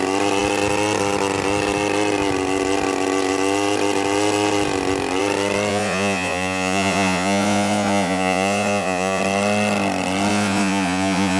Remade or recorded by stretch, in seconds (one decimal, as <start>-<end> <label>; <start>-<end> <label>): 0.0-5.7 recorded; 5.7-9.2 remade; 9.2-10.3 recorded; 10.3-11.4 remade